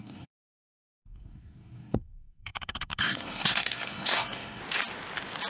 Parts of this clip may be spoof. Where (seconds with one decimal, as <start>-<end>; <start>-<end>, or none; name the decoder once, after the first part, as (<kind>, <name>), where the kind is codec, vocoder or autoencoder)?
0.0-4.6 (codec, SNAC)